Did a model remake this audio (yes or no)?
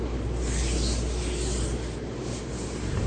no